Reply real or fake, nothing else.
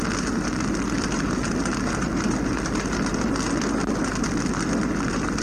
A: real